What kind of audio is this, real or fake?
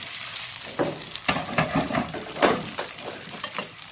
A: fake